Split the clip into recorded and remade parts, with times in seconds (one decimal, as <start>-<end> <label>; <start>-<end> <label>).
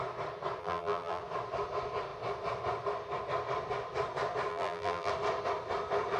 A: 0.0-0.6 recorded; 0.6-1.2 remade; 1.2-4.5 recorded; 4.5-5.1 remade; 5.1-6.2 recorded